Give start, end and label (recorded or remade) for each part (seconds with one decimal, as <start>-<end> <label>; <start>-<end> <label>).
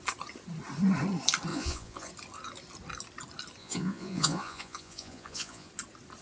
0.0-1.5 recorded; 1.5-2.1 remade; 2.1-3.6 recorded; 3.6-5.7 remade; 5.7-6.2 recorded